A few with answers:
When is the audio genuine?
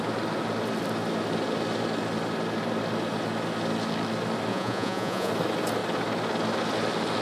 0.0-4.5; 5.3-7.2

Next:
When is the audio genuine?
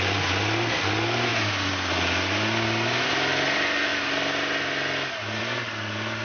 0.0-6.2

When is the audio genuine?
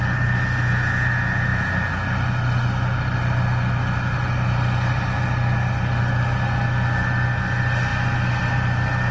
0.0-9.1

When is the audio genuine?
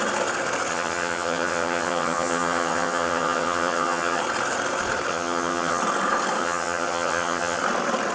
0.0-0.7; 4.2-5.1; 5.8-6.4; 7.6-8.1